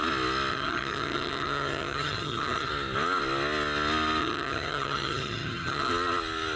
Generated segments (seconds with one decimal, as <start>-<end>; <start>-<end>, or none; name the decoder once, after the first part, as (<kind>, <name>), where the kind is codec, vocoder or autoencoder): 0.5-2.7 (vocoder, HiFi-GAN); 4.2-5.9